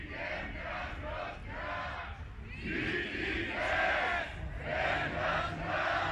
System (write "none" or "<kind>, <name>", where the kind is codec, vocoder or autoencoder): none